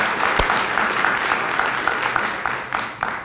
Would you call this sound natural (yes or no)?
yes